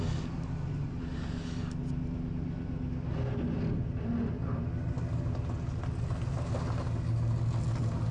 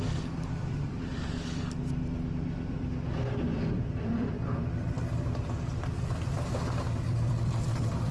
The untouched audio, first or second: first